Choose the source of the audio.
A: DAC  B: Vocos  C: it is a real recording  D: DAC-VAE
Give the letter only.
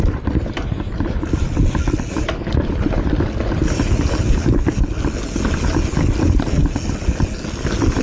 C